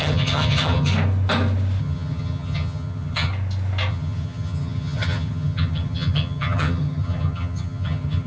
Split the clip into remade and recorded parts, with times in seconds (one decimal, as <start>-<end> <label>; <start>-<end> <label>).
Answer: 0.0-0.9 remade; 0.9-1.8 recorded; 1.8-3.3 remade; 3.3-3.9 recorded; 3.9-8.3 remade